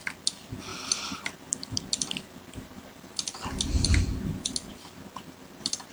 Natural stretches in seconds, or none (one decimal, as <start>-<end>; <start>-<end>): 0.0-0.7; 3.7-4.7

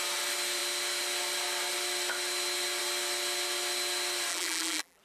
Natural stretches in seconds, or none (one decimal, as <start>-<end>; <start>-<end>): 0.0-4.3

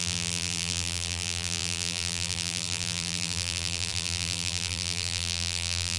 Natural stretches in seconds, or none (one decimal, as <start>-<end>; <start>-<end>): none

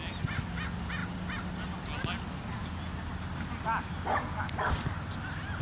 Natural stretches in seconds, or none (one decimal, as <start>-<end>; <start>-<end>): 0.0-5.6